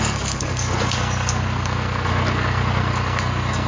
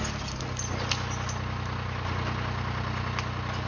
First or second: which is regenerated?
first